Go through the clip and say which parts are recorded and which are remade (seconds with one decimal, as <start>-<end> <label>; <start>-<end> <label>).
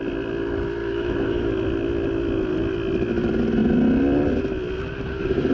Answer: 0.0-0.8 recorded; 0.8-1.5 remade; 1.5-5.5 recorded